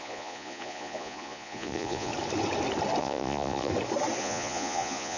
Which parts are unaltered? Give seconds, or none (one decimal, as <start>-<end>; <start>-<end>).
2.1-3.0; 3.7-4.2